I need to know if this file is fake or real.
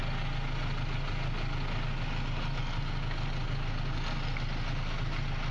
real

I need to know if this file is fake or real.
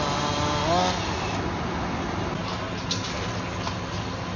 real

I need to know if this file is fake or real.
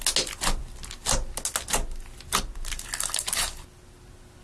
real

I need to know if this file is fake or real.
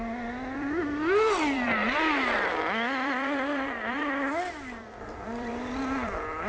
fake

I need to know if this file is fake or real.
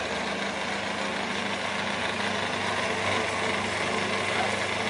real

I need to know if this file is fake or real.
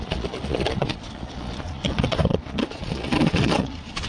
fake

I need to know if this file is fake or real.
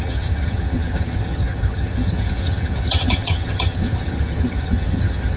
fake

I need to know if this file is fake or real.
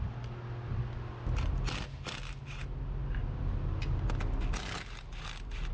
real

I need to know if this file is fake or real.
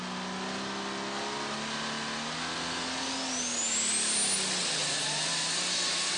real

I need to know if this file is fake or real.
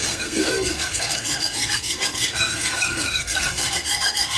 fake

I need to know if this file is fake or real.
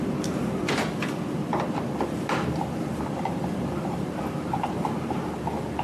fake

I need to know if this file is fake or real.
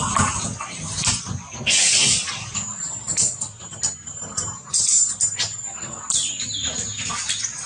real